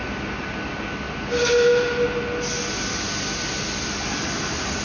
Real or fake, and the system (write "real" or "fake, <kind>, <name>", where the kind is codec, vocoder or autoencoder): real